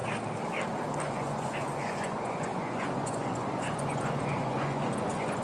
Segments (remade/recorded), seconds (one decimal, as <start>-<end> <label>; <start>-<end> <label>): 0.0-1.0 recorded; 1.0-5.4 remade